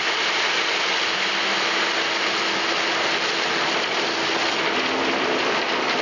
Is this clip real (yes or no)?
yes